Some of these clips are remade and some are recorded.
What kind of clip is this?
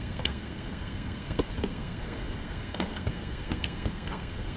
remade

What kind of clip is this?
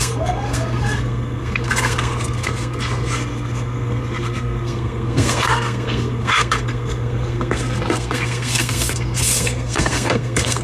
remade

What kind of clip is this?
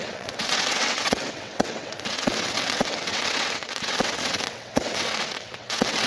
remade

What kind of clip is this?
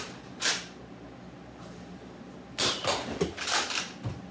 recorded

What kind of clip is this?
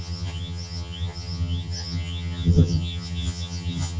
remade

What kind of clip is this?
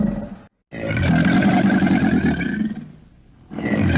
recorded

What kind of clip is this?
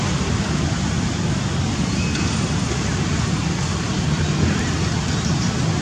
recorded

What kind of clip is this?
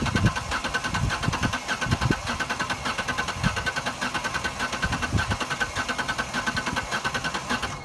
recorded